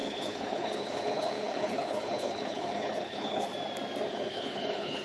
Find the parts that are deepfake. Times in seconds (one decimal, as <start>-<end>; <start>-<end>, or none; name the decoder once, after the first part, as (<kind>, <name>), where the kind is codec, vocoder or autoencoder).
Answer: 0.0-3.5 (codec, HILCodec); 4.1-5.0